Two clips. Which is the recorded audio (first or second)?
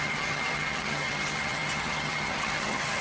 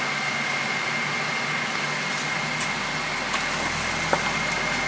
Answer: second